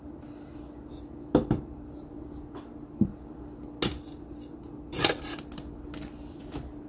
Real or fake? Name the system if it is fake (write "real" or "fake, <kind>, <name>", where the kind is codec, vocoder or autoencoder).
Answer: real